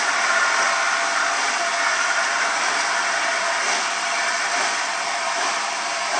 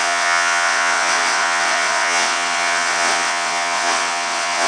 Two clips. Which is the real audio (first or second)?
first